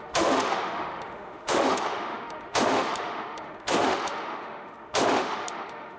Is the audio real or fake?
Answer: fake